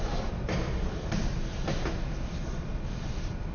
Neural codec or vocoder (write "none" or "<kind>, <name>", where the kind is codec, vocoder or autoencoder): none